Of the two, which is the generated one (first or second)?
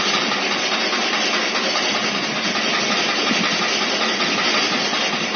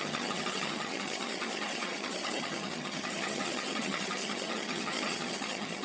second